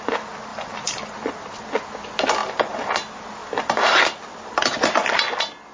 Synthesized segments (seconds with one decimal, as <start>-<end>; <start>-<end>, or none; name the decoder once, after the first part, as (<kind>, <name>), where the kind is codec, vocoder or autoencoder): 0.5-1.5 (vocoder, BigVGAN v2); 2.4-2.9; 3.4-5.1